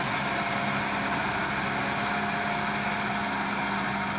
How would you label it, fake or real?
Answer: real